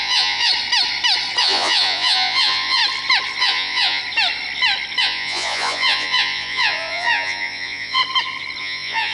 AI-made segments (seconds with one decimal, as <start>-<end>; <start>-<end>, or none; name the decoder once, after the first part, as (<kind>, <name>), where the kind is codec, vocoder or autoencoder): 0.0-0.5 (vocoder, Vocos); 1.4-2.8; 3.4-4.0; 5.0-8.0; 8.6-9.1